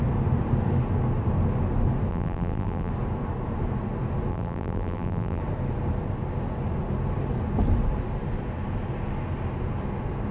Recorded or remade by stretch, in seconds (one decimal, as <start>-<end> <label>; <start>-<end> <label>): 0.0-2.1 recorded; 2.1-2.9 remade; 2.9-4.3 recorded; 4.3-5.4 remade; 5.4-10.3 recorded